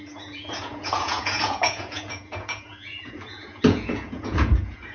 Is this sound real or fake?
fake